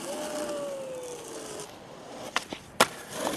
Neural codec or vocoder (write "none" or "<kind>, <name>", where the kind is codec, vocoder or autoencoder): none